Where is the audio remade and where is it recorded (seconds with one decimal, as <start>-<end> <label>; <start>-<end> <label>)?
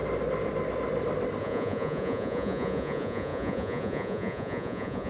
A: 0.0-1.4 recorded; 1.4-5.1 remade